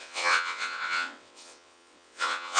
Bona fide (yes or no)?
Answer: no